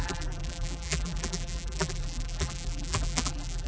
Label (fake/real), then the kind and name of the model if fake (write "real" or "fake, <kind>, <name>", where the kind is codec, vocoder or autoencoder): fake, vocoder, BigVGAN v2